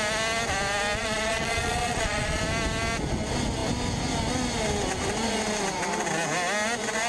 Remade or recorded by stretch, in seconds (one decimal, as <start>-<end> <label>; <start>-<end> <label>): 0.0-1.0 recorded; 1.0-2.4 remade; 2.4-7.1 recorded